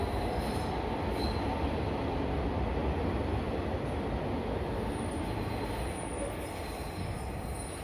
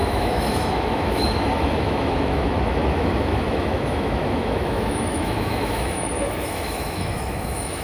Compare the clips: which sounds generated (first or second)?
second